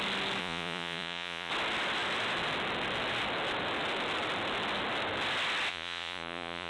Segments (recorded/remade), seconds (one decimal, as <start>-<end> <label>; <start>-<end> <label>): 0.0-0.4 recorded; 0.4-1.5 remade; 1.5-5.7 recorded; 5.7-6.7 remade